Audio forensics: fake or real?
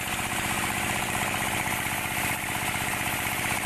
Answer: real